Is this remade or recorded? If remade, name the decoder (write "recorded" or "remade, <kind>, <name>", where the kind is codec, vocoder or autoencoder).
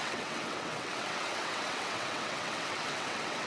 remade, vocoder, WaveNeXt